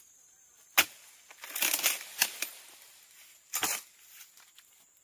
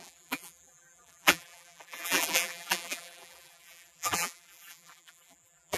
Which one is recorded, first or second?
first